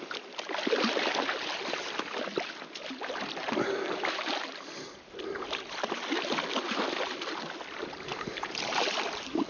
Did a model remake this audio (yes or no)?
no